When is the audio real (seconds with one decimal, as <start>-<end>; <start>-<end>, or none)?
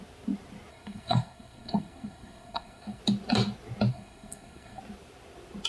0.0-0.7; 3.0-3.9; 4.8-5.7